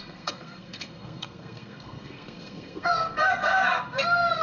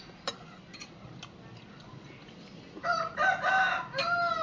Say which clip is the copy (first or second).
first